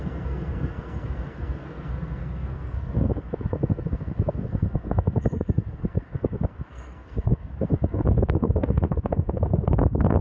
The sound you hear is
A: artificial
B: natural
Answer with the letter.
A